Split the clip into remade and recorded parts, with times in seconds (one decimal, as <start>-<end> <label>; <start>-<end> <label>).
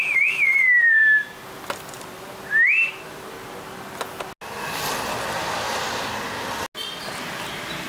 0.0-7.9 recorded